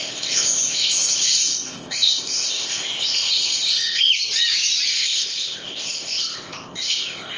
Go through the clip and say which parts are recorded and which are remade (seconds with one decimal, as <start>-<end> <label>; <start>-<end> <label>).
0.0-4.1 remade; 4.1-4.9 recorded; 4.9-7.4 remade